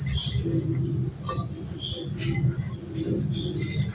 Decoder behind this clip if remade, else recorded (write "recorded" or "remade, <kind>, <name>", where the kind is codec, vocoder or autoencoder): recorded